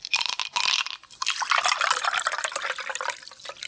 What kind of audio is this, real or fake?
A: real